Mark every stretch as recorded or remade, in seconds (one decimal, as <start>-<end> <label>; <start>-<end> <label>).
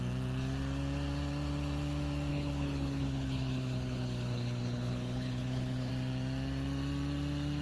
0.0-2.3 recorded; 2.3-5.9 remade; 5.9-7.6 recorded